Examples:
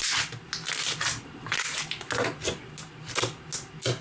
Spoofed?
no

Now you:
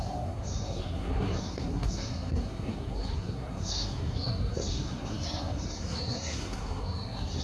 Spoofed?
yes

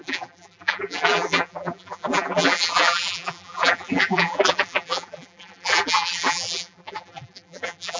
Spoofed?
yes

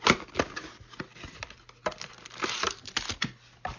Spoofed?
no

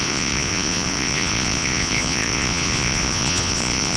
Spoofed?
yes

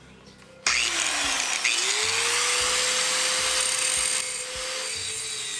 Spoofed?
no